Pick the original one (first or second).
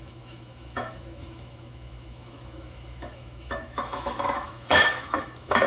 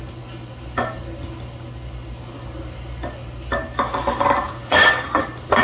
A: second